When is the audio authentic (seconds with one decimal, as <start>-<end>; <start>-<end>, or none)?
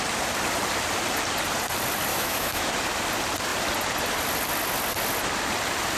0.0-2.1; 2.7-6.0